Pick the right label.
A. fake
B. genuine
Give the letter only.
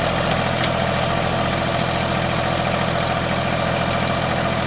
B